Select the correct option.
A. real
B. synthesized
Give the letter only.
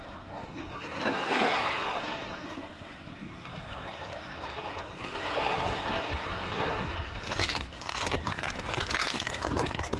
B